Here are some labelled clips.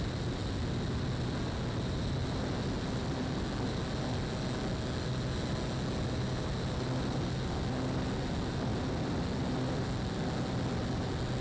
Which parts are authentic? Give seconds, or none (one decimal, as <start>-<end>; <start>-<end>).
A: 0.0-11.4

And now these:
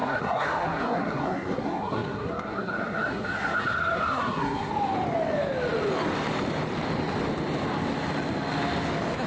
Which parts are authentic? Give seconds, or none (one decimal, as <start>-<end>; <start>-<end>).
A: 4.7-9.3

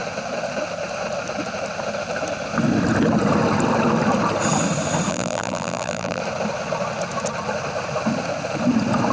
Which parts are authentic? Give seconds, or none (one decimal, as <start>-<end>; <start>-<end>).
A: 0.0-5.1; 6.2-9.1